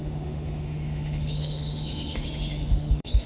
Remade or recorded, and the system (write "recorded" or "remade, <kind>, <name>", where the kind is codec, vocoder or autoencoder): remade, autoencoder, DAC-VAE